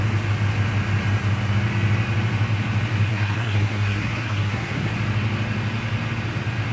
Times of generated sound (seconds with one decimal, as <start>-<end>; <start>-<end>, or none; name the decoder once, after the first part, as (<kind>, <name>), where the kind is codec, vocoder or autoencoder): 3.1-4.9 (codec, SNAC)

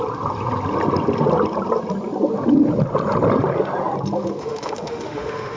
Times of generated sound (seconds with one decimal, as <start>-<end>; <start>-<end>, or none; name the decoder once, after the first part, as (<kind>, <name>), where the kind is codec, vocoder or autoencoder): 4.4-5.6 (autoencoder, DAC-VAE)